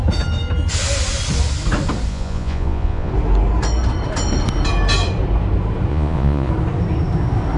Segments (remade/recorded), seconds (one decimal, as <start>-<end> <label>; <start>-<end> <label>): 0.0-2.1 recorded; 2.1-3.1 remade; 3.1-5.9 recorded; 5.9-6.5 remade; 6.5-7.6 recorded